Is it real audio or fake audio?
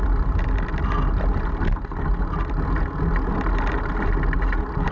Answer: real